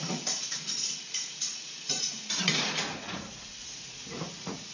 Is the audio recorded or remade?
remade